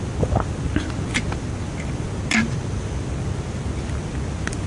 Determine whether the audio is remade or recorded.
recorded